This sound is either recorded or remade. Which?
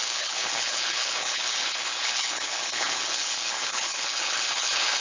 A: remade